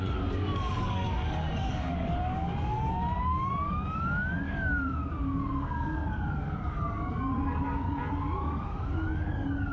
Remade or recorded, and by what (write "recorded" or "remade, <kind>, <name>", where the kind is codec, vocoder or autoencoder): remade, codec, DAC